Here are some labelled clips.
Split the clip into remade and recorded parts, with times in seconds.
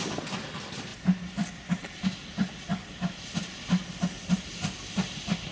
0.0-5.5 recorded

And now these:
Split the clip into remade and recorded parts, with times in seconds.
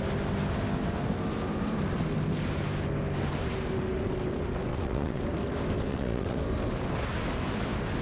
0.0-4.7 recorded; 4.7-5.2 remade; 5.2-5.9 recorded; 5.9-6.4 remade; 6.4-8.0 recorded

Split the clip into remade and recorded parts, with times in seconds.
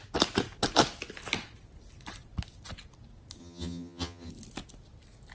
0.0-3.4 recorded; 3.4-4.3 remade; 4.3-5.3 recorded